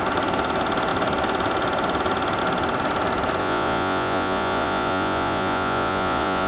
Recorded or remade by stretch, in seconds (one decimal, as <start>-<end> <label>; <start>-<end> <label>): 0.0-3.4 recorded; 3.4-6.5 remade